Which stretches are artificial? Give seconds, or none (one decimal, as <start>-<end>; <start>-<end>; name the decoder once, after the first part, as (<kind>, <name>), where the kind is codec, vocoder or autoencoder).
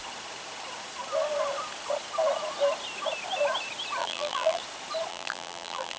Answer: 4.0-4.6 (vocoder, BigVGAN v2); 5.1-6.0